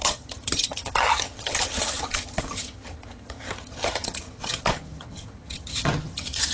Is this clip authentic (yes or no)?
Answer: no